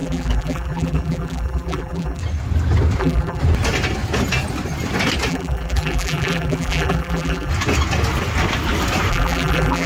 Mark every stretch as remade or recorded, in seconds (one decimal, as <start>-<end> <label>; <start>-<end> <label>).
0.0-2.2 remade; 2.2-3.0 recorded; 3.0-3.4 remade; 3.4-5.3 recorded; 5.3-7.5 remade; 7.5-9.1 recorded; 9.1-9.9 remade